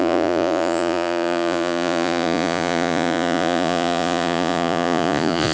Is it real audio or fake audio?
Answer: fake